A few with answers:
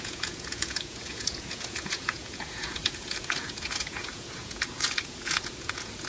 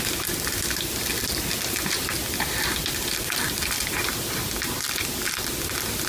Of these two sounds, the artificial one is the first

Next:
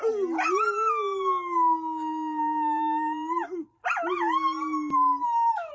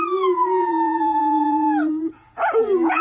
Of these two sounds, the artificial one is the second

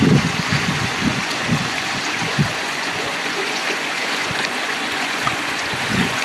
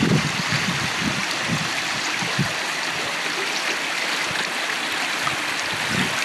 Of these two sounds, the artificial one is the first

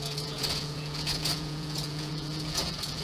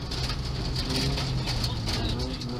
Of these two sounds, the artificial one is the first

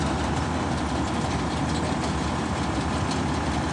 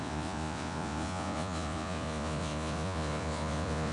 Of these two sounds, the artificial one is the second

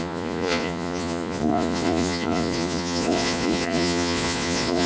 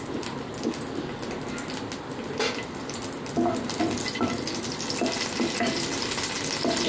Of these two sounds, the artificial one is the first